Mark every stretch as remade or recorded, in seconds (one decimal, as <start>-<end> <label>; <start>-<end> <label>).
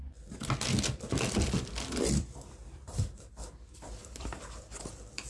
0.0-2.1 recorded; 2.1-5.3 remade